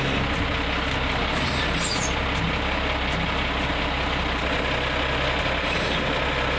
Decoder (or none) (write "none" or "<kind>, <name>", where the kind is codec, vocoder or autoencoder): none